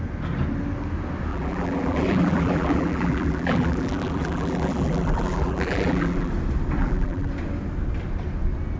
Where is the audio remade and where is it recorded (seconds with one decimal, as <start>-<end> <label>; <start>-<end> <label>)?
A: 0.0-1.3 recorded; 1.3-6.3 remade; 6.3-6.8 recorded; 6.8-7.3 remade; 7.3-8.8 recorded